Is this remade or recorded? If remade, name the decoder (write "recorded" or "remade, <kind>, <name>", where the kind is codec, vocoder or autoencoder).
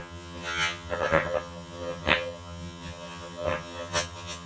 remade, vocoder, HiFi-GAN